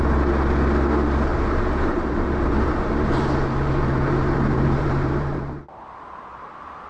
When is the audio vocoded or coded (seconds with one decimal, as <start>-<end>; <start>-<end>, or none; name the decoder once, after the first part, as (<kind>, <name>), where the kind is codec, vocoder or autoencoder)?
1.3-5.4 (vocoder, BigVGAN v2)